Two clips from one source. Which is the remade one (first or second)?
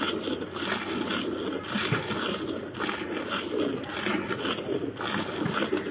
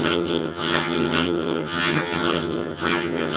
second